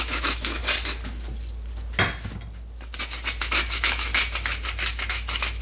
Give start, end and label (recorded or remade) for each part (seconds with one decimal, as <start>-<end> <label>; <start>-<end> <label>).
0.0-0.6 remade; 0.6-3.4 recorded; 3.4-4.1 remade; 4.1-5.1 recorded; 5.1-5.6 remade